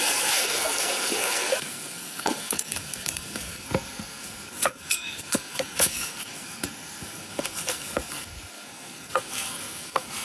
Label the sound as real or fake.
fake